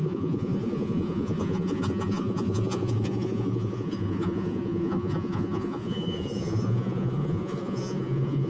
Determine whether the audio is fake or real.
fake